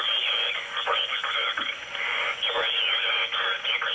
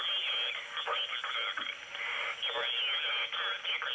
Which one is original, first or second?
second